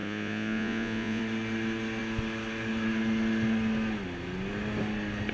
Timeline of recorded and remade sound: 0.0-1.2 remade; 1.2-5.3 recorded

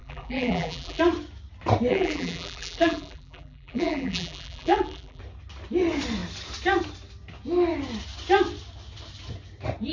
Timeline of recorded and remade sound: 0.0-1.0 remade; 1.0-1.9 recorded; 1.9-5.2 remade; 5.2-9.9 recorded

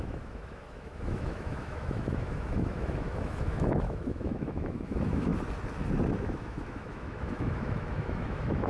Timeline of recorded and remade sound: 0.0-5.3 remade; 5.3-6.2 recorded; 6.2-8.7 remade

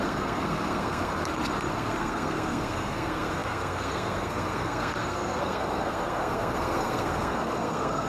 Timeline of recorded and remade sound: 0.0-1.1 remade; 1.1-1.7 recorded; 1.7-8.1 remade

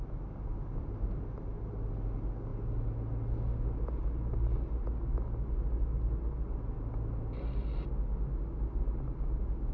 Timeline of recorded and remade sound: 0.0-9.7 recorded

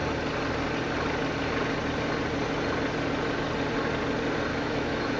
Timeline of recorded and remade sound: 0.0-4.5 recorded; 4.5-5.2 remade